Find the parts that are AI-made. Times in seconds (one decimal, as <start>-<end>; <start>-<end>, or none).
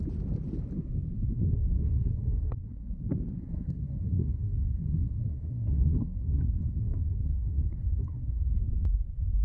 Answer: 1.3-3.0; 3.4-8.4